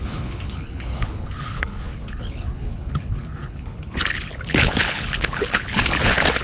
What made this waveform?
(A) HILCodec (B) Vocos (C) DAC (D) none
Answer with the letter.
A